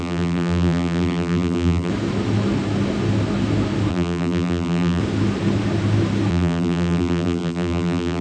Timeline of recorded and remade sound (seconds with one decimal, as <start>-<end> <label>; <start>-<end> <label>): 0.0-1.9 remade; 1.9-3.9 recorded; 3.9-5.0 remade; 5.0-6.3 recorded; 6.3-8.2 remade